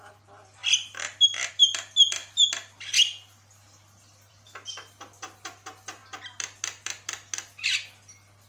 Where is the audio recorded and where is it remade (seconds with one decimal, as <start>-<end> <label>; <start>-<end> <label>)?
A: 0.0-8.5 recorded